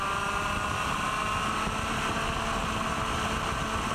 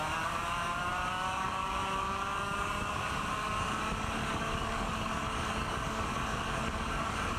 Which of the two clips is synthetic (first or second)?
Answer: second